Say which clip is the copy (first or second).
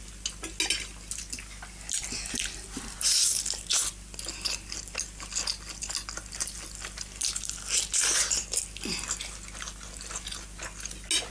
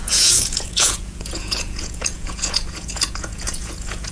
second